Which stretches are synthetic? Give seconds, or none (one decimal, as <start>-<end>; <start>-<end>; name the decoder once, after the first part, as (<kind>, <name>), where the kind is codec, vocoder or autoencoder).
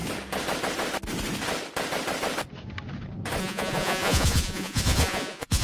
3.4-5.6 (vocoder, Vocos)